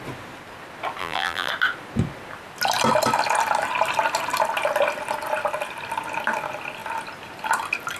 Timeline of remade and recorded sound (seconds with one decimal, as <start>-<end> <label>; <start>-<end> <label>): 0.0-1.0 recorded; 1.0-1.5 remade; 1.5-8.0 recorded